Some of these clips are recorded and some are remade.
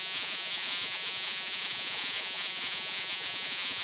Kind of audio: remade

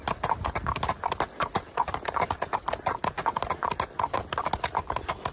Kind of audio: recorded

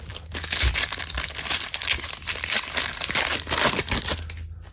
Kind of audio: recorded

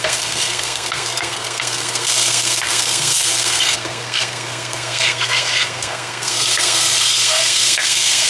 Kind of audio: remade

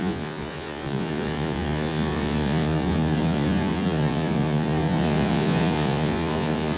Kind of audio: remade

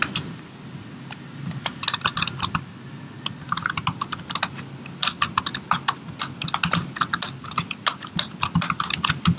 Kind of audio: recorded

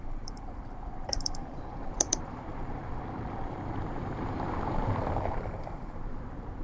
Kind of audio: remade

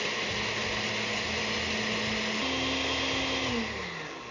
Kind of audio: recorded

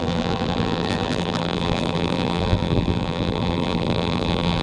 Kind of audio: remade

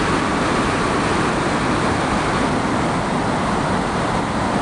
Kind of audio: recorded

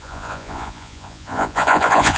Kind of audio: remade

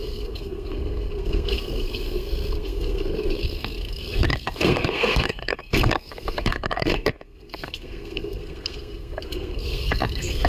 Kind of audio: remade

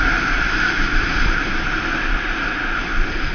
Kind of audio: recorded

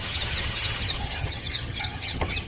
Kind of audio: remade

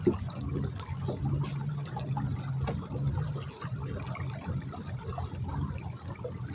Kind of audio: recorded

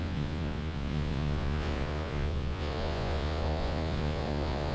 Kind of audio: remade